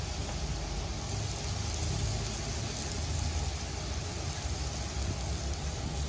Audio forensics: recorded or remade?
recorded